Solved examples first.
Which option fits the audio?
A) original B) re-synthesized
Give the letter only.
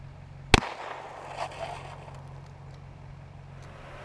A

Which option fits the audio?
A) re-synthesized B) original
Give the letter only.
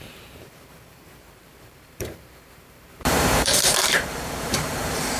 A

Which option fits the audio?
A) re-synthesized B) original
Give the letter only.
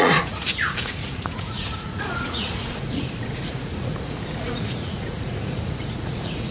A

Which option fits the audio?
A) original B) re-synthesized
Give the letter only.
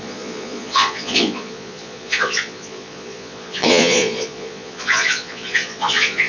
B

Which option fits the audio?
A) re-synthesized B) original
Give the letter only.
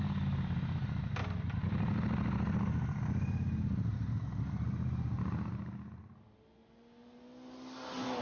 B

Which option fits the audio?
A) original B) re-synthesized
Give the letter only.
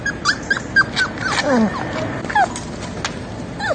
A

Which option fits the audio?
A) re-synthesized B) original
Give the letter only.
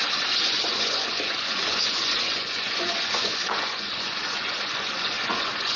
A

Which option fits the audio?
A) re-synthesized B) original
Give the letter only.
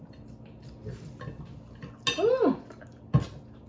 B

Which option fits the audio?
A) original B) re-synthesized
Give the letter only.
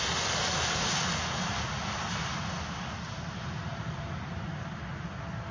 A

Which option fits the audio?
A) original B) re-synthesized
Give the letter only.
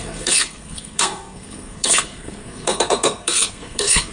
B